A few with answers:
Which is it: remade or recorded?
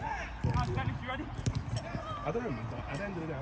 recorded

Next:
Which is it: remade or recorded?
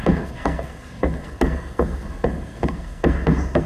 remade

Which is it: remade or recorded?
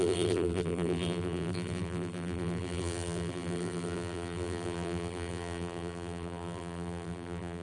remade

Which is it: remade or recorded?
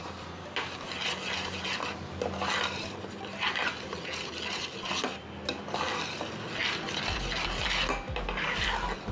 recorded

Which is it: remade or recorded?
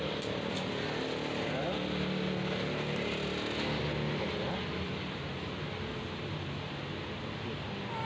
recorded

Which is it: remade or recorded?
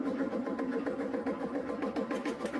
recorded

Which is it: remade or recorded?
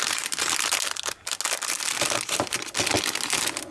recorded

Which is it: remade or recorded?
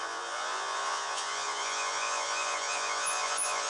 remade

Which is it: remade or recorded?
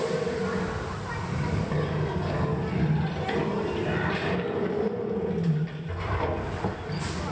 recorded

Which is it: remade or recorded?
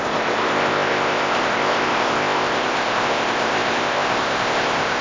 remade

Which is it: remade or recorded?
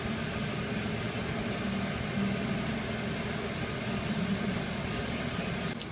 recorded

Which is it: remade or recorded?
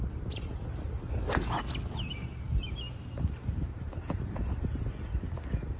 recorded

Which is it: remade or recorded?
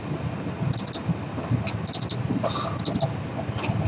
recorded